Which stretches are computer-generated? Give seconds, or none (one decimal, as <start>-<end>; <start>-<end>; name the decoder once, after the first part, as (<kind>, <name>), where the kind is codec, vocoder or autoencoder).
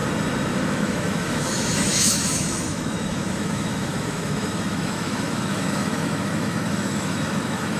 0.7-7.8 (autoencoder, DAC-VAE)